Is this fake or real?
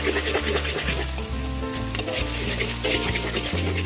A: real